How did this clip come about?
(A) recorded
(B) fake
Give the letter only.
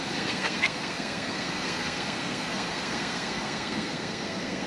B